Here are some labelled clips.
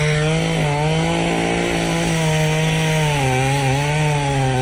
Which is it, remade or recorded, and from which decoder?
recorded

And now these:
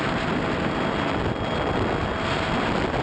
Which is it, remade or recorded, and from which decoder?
recorded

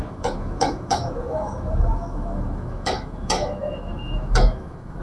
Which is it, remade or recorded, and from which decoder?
remade, autoencoder, DAC-VAE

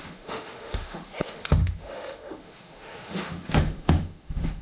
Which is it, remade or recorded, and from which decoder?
remade, autoencoder, DAC-VAE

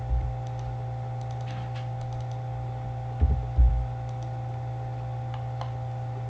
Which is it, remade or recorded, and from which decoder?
recorded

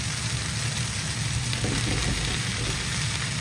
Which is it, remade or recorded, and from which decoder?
recorded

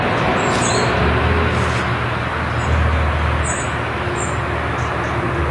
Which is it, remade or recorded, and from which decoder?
recorded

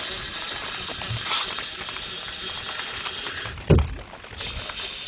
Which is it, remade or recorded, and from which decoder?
recorded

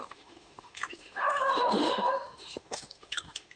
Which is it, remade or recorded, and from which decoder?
remade, autoencoder, DAC-VAE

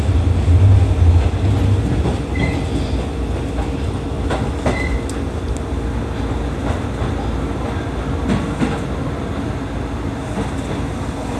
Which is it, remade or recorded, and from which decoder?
recorded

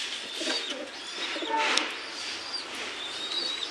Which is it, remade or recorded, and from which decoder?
recorded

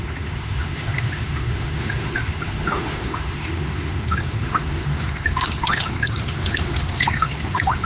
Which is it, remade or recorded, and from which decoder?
remade, autoencoder, DAC-VAE